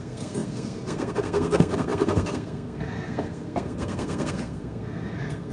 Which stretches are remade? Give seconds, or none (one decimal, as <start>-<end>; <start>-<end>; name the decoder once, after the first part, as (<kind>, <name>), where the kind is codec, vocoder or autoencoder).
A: 0.0-5.5 (codec, SNAC)